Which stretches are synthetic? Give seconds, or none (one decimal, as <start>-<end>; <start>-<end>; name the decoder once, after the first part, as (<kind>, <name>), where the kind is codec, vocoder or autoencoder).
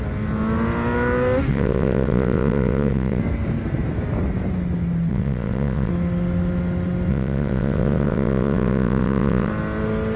1.5-3.2 (vocoder, WaveNeXt); 5.1-5.9; 7.1-9.5